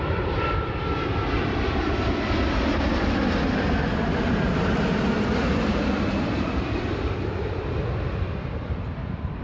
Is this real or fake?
fake